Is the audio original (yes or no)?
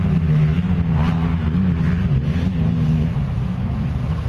yes